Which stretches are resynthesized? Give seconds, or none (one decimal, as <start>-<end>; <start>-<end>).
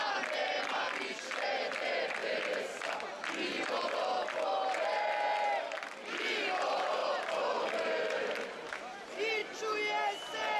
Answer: 7.0-8.7